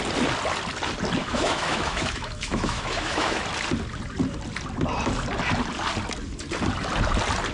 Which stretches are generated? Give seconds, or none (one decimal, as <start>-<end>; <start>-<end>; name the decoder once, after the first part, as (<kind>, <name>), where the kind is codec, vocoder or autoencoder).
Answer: 1.2-3.4 (autoencoder, DAC-VAE)